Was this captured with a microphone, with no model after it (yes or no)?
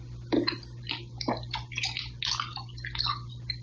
yes